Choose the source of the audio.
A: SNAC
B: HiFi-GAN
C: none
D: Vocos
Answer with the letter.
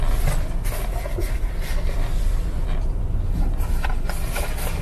C